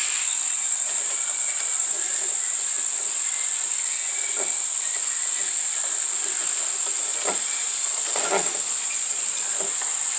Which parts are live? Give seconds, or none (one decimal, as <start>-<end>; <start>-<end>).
0.0-0.7; 2.0-7.1; 9.6-10.2